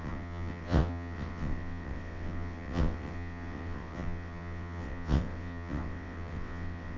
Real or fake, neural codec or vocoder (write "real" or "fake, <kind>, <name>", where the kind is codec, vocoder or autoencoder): fake, vocoder, WaveNeXt